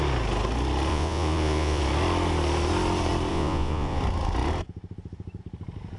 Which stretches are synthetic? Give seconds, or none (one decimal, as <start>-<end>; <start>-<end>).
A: 0.9-1.8; 3.3-4.0